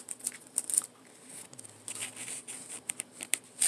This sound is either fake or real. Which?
real